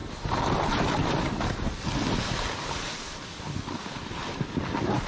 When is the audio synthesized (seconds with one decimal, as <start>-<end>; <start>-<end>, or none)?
0.0-1.0

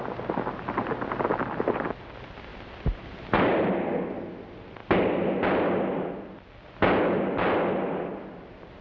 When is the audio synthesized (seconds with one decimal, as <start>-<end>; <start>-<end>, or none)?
2.5-3.1

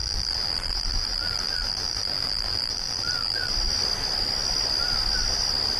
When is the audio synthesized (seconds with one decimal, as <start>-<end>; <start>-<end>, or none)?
0.0-3.5

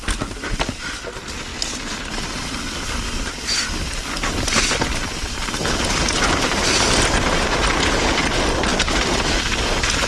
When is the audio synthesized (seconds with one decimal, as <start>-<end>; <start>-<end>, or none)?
none

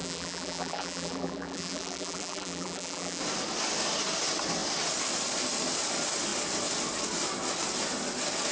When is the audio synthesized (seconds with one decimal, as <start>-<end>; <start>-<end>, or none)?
0.0-3.2

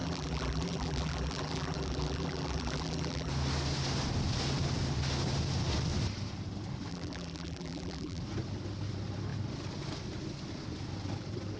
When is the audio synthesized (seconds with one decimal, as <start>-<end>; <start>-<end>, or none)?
0.0-3.3; 6.9-8.2

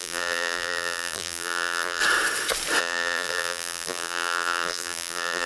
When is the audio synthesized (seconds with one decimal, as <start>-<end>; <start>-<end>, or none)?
0.0-2.0; 2.8-5.5